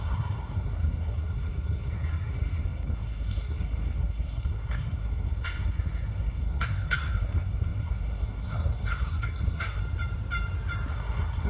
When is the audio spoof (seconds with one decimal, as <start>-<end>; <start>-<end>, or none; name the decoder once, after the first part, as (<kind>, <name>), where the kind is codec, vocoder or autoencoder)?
0.0-9.8 (codec, SNAC); 10.9-11.5